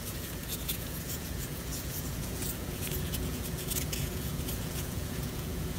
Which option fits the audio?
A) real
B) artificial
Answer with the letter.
B